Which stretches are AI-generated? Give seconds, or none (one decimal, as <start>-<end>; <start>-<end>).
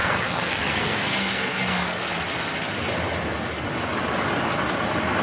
0.0-2.0